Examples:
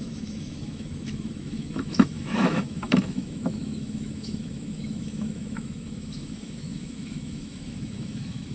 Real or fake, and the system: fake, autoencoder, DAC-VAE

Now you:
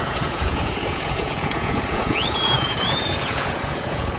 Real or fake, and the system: fake, vocoder, Vocos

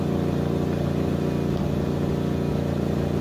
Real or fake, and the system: real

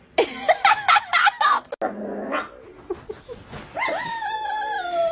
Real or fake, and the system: real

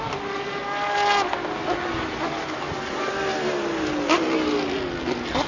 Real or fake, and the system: real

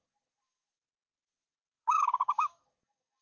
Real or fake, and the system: fake, codec, DAC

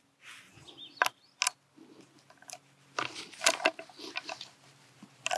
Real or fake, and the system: real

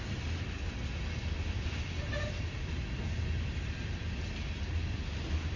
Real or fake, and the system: real